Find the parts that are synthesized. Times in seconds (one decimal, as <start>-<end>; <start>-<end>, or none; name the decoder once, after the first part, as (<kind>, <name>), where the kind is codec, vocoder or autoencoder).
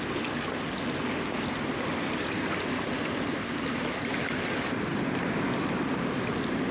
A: none